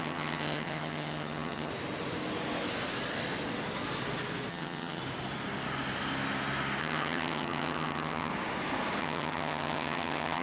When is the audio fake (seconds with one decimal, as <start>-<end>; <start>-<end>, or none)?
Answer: 0.0-1.7; 4.5-5.0; 6.8-8.3; 9.0-10.4